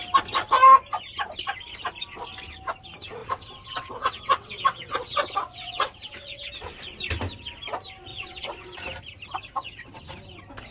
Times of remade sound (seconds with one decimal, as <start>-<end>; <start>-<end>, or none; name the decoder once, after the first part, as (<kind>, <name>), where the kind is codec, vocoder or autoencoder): 3.2-6.5 (vocoder, WaveNeXt); 8.1-8.8; 9.4-10.0